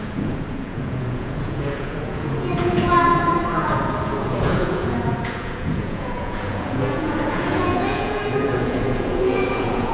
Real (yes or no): no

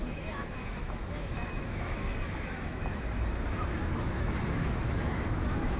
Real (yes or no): no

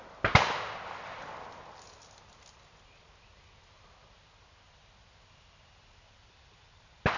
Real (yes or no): yes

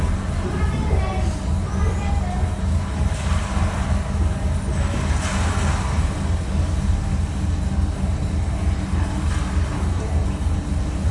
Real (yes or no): yes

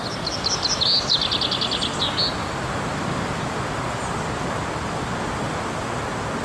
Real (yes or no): yes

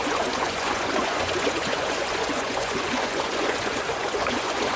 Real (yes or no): no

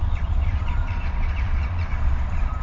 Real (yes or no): no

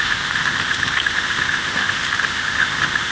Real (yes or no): no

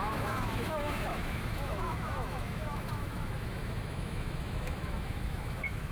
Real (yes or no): no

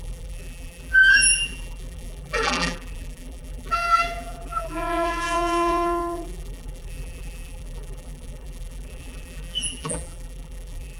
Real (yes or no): no